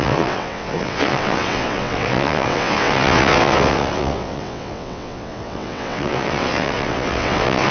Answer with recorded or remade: remade